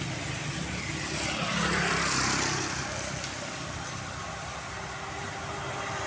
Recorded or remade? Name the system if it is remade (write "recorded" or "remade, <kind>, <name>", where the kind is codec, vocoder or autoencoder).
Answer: remade, vocoder, BigVGAN v2